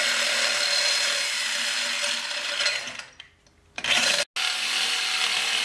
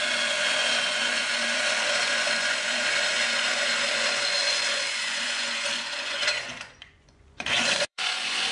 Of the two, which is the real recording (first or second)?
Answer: first